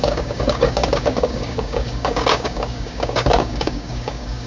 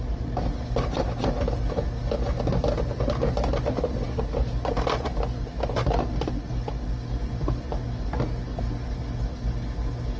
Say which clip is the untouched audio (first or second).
second